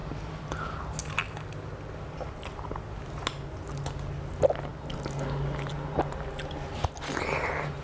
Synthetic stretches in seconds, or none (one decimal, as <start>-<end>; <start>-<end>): none